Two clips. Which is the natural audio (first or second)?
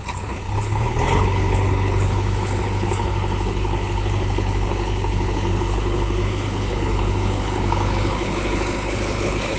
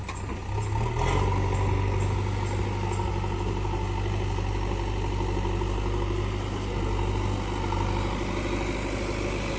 second